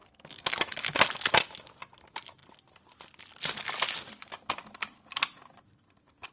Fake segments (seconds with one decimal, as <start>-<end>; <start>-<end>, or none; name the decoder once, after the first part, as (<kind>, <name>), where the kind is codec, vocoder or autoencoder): none